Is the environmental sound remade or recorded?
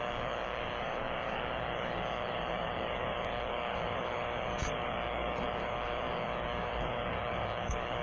remade